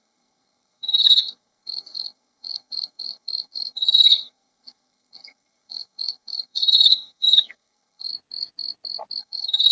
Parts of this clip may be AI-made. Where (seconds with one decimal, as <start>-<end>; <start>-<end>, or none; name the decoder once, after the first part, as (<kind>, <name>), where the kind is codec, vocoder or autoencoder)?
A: 0.0-8.1 (codec, SNAC); 9.2-9.7